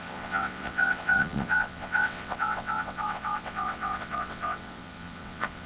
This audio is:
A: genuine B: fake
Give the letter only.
B